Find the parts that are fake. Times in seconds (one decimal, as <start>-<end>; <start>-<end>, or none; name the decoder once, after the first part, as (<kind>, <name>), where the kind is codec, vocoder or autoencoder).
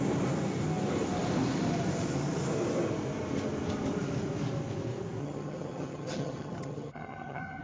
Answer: 5.2-7.6 (vocoder, HiFi-GAN)